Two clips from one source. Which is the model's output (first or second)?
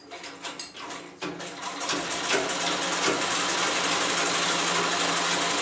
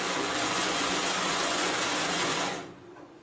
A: second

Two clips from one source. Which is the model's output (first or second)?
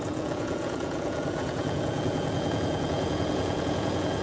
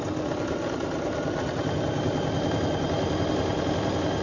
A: first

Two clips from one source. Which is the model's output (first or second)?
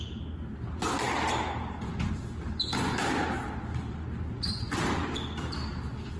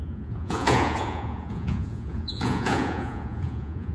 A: second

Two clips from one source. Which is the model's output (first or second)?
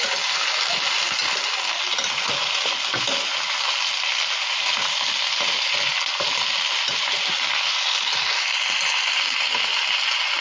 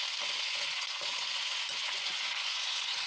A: second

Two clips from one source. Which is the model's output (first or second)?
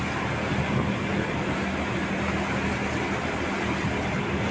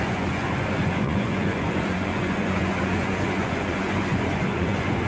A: second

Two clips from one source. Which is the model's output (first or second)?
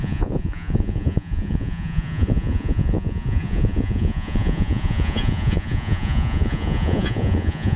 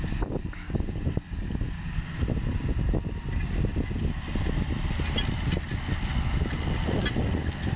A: first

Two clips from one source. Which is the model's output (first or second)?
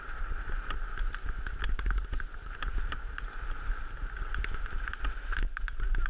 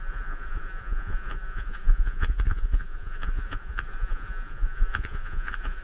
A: second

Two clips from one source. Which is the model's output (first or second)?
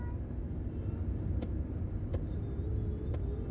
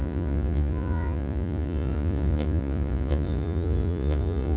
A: second